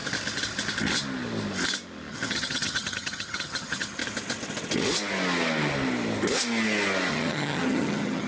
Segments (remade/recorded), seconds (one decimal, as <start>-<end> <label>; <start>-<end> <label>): 0.0-2.1 recorded; 2.1-4.0 remade; 4.0-7.1 recorded; 7.1-8.3 remade

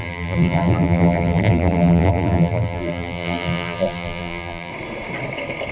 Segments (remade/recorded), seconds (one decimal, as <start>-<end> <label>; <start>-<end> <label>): 0.0-4.7 remade; 4.7-5.7 recorded